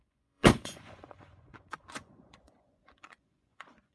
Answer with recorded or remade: remade